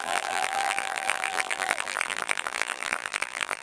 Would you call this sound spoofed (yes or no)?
yes